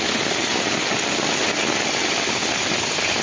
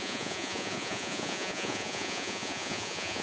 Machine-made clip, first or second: second